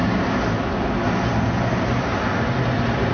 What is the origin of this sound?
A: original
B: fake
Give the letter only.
A